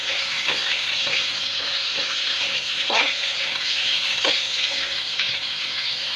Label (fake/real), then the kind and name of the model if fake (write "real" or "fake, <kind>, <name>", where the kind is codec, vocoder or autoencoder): fake, codec, SNAC